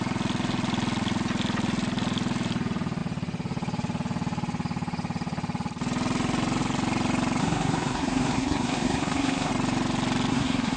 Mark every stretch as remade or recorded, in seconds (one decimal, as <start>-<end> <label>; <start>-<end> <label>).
0.0-7.4 recorded; 7.4-9.5 remade; 9.5-10.3 recorded; 10.3-10.8 remade